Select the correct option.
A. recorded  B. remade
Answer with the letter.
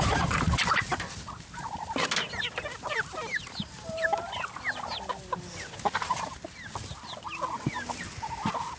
A